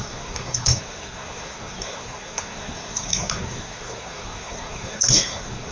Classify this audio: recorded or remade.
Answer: remade